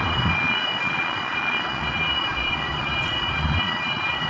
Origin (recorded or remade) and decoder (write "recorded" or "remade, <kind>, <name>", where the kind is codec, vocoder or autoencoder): remade, vocoder, Vocos